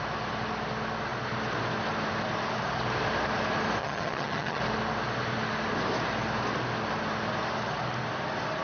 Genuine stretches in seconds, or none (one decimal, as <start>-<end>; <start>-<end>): 0.0-3.8; 4.6-8.6